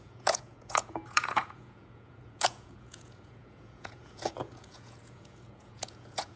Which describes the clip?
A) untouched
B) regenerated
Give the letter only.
B